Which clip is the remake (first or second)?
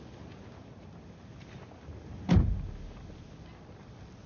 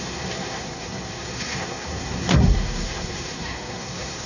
second